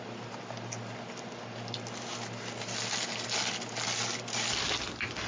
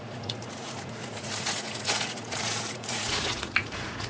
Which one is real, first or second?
first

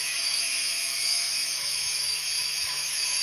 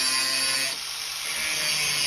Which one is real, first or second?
second